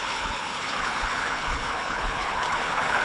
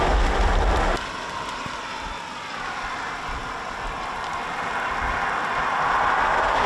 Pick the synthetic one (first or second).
first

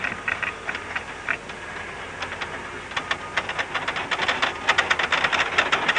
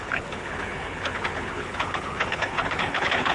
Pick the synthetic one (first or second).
second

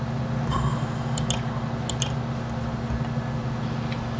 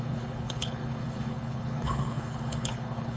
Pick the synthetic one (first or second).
second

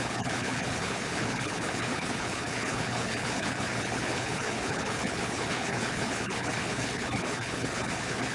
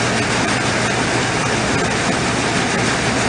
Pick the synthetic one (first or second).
first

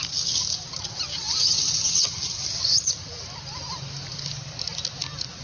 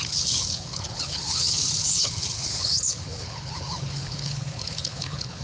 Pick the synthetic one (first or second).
second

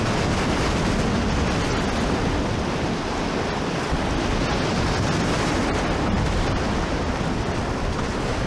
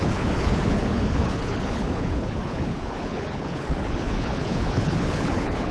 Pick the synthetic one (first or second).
second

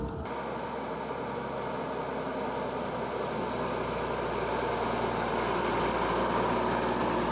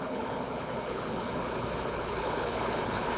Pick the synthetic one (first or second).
second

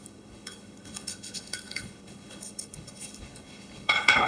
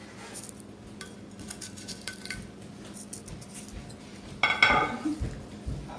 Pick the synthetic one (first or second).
first